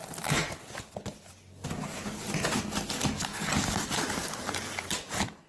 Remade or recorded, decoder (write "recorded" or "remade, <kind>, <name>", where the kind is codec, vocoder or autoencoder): recorded